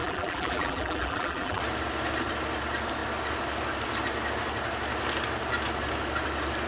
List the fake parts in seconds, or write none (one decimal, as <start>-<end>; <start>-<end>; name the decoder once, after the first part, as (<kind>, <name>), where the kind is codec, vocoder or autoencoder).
0.0-1.6 (vocoder, BigVGAN v2)